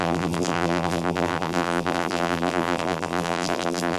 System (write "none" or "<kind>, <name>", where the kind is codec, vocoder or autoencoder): vocoder, BigVGAN v2